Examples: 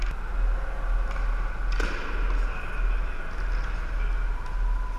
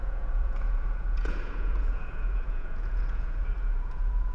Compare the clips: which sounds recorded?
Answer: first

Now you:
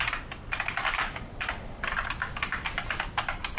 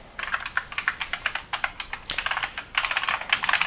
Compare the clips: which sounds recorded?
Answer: second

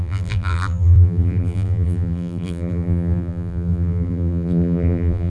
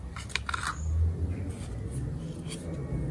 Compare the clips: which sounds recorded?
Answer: second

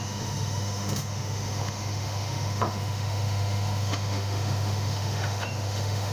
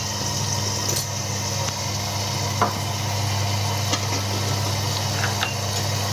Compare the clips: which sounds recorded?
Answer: second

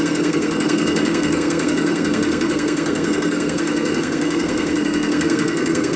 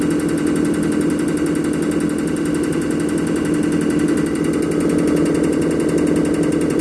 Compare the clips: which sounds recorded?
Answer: second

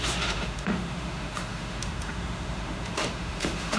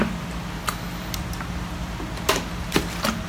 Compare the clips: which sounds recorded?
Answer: second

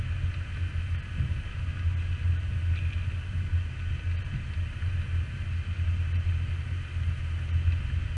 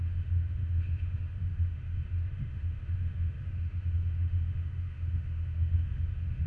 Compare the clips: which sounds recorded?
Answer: first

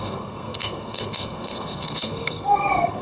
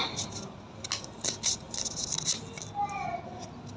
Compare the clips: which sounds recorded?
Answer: second